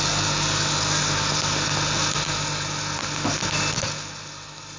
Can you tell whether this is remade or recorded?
recorded